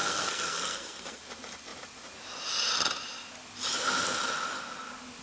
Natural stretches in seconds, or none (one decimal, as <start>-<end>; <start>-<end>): 1.2-5.2